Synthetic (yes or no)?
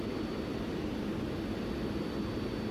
no